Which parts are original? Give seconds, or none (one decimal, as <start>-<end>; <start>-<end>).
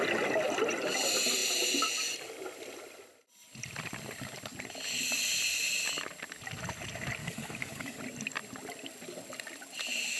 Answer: 0.0-7.2; 8.0-10.2